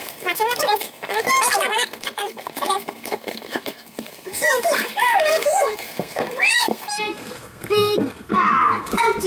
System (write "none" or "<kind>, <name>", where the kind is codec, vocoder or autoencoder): codec, SNAC